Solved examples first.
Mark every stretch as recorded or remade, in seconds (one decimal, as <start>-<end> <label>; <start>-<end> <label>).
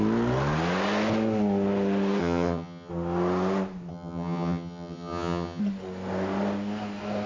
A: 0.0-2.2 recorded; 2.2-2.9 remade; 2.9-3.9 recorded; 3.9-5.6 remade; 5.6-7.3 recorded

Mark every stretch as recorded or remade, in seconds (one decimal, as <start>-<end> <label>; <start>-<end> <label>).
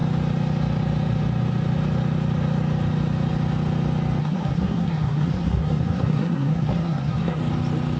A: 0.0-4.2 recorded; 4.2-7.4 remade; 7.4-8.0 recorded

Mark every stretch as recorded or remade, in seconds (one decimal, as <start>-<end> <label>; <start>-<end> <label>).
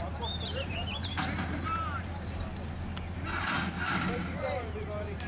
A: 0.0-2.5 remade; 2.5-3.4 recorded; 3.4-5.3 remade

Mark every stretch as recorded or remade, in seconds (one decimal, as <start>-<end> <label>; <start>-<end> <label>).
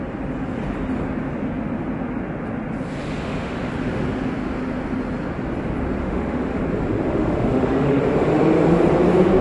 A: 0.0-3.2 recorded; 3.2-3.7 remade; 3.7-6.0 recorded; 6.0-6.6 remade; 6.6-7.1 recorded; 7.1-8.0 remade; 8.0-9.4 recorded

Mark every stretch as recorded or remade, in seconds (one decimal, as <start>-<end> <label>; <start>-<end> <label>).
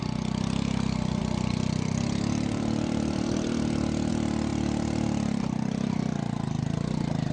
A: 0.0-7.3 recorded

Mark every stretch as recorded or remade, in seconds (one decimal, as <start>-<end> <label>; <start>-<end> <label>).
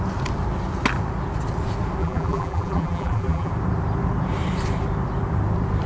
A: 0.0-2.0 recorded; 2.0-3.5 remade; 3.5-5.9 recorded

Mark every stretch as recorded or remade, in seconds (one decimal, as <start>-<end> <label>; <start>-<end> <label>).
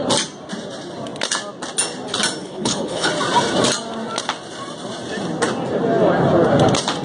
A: 0.0-2.4 recorded; 2.4-3.1 remade; 3.1-7.0 recorded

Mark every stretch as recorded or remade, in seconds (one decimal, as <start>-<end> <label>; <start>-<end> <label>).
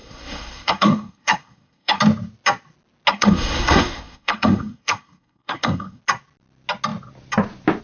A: 0.0-2.0 remade; 2.0-3.1 recorded; 3.1-6.0 remade; 6.0-7.8 recorded